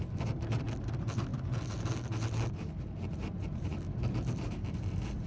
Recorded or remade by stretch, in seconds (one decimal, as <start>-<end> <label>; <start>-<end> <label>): 0.0-5.3 remade